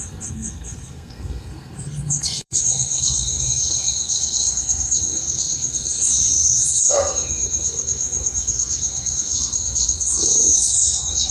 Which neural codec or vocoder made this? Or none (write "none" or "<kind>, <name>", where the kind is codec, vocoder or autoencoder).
codec, SNAC